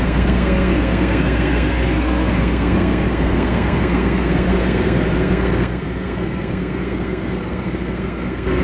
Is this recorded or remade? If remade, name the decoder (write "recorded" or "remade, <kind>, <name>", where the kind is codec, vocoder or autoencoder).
remade, codec, SNAC